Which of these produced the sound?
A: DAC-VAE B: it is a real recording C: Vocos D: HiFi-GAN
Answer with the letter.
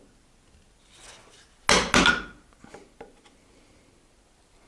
B